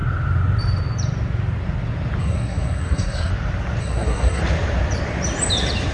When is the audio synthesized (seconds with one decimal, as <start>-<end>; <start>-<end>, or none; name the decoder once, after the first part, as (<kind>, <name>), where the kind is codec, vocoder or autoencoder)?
2.2-3.3 (codec, SNAC); 3.8-4.4